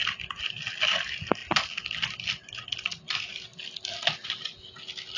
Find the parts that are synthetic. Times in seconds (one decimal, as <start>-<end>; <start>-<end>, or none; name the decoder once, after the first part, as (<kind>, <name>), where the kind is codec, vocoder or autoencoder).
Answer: none